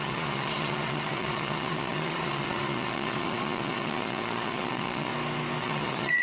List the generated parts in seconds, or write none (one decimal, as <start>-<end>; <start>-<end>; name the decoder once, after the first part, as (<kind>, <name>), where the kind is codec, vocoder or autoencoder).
0.0-5.1 (vocoder, Vocos); 5.6-6.2